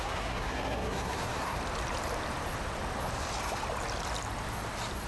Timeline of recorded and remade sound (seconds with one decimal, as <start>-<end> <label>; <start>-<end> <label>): 0.0-1.6 remade; 1.6-5.1 recorded